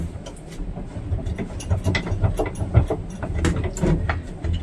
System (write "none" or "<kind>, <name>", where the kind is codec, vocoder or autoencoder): none